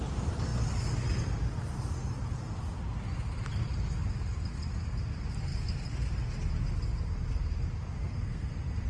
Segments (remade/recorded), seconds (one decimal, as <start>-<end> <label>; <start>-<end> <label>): 0.0-8.0 recorded; 8.0-8.5 remade; 8.5-8.9 recorded